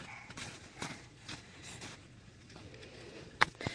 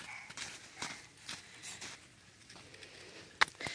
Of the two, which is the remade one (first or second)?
first